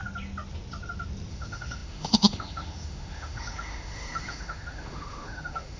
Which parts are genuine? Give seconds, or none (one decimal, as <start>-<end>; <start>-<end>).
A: 0.0-1.3